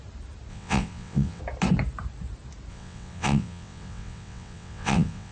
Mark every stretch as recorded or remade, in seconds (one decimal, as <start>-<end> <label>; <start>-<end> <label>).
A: 0.0-0.5 recorded; 0.5-1.4 remade; 1.4-2.7 recorded; 2.7-5.3 remade